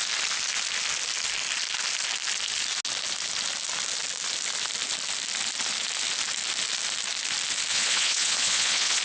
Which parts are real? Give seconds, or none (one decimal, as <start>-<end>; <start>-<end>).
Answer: 0.0-7.7